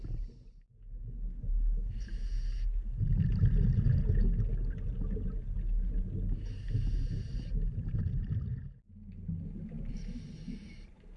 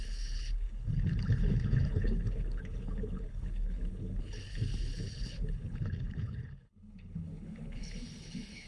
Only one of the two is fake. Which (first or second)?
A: second